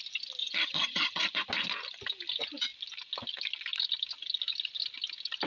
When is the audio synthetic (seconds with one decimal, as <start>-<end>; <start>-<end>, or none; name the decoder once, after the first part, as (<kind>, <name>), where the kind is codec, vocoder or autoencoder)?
0.4-1.2 (vocoder, HiFi-GAN)